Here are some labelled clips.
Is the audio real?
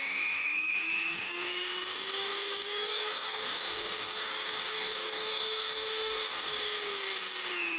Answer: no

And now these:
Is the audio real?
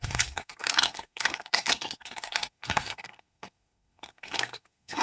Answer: no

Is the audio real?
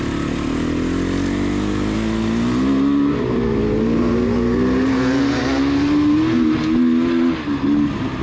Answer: yes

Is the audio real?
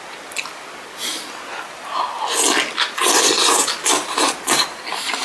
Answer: yes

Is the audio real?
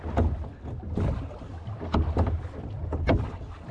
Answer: yes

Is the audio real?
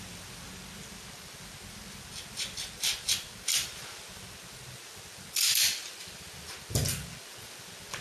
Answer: yes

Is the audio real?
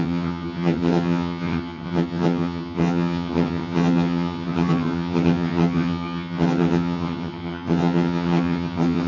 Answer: no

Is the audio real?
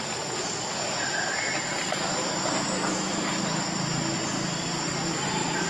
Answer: yes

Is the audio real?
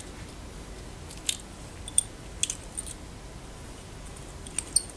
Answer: yes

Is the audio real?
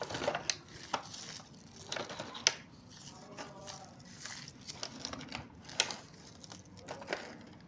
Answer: yes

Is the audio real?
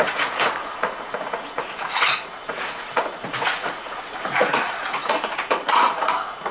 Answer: no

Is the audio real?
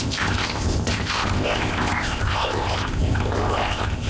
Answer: no